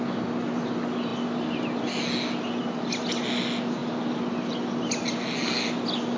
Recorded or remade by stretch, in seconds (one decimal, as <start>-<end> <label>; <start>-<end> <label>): 0.0-6.2 recorded